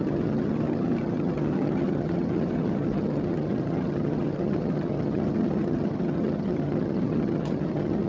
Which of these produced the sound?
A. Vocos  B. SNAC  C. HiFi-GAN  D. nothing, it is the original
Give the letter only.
C